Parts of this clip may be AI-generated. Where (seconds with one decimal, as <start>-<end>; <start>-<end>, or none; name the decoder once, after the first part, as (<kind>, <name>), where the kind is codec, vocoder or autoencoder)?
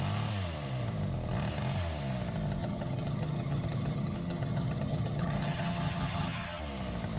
2.6-6.6 (vocoder, HiFi-GAN)